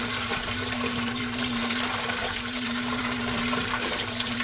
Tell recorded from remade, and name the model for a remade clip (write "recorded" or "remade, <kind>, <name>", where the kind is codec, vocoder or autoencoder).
remade, vocoder, BigVGAN v2